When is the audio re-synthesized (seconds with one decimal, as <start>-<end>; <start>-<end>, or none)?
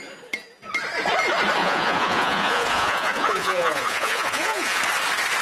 1.6-4.8